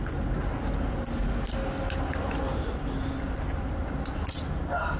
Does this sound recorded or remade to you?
recorded